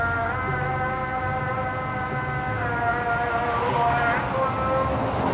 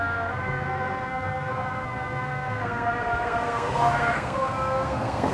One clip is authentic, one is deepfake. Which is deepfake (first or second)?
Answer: second